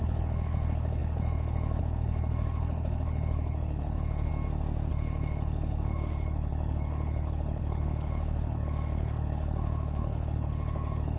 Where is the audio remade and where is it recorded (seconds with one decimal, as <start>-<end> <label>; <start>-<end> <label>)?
0.0-4.3 remade; 4.3-4.9 recorded; 4.9-11.2 remade